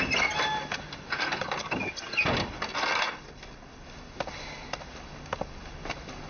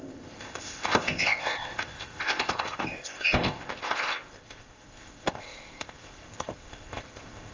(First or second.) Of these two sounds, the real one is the first